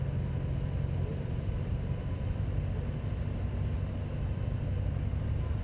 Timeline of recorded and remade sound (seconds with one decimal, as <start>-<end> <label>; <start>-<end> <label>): 0.0-1.1 recorded; 1.1-2.6 remade; 2.6-5.6 recorded